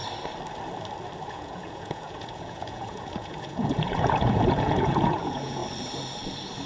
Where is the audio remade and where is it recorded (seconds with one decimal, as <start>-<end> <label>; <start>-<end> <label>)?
0.0-1.2 recorded; 1.2-5.6 remade; 5.6-6.7 recorded